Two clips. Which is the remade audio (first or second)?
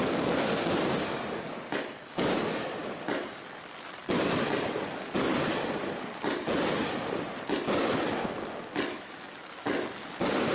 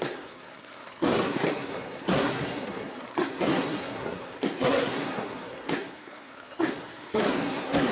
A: second